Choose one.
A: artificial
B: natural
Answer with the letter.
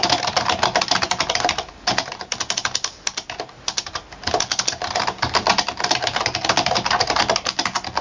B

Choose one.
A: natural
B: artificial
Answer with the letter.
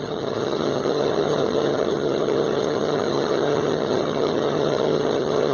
B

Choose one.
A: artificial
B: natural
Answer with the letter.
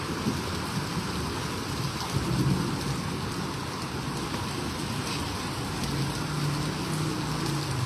B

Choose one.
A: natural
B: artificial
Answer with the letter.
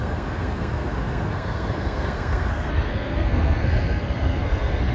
B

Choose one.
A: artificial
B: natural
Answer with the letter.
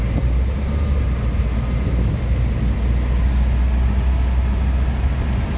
B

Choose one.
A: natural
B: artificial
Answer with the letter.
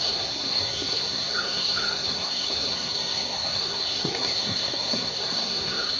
B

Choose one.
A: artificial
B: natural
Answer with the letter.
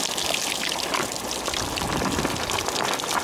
B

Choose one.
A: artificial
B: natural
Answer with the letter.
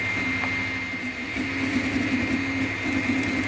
B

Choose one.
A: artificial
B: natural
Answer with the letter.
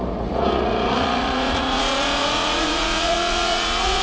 A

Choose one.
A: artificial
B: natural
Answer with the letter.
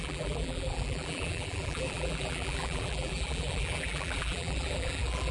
A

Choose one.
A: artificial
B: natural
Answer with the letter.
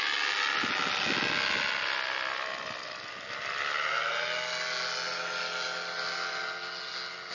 B